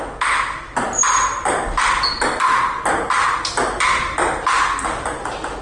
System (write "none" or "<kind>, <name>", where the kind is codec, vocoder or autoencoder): none